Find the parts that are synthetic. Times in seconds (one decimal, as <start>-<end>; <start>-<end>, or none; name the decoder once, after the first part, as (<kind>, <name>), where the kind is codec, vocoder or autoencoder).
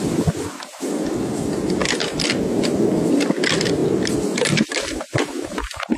1.8-2.9 (vocoder, BigVGAN v2); 3.8-5.0